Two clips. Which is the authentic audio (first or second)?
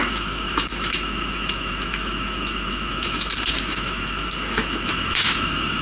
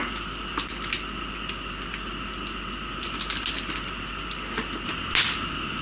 second